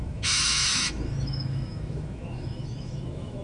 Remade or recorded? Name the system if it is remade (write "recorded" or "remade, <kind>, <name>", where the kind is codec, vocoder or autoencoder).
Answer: remade, autoencoder, DAC-VAE